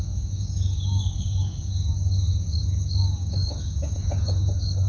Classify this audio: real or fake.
fake